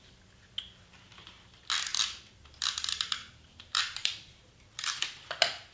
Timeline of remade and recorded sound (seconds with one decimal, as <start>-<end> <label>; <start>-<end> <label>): 0.0-1.9 recorded; 1.9-5.3 remade; 5.3-5.7 recorded